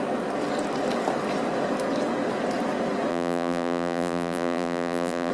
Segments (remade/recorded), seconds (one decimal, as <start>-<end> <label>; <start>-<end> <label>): 0.0-3.1 recorded; 3.1-5.3 remade